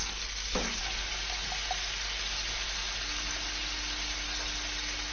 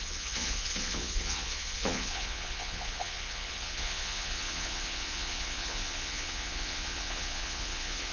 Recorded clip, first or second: first